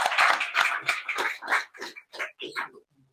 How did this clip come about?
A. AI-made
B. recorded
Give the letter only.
B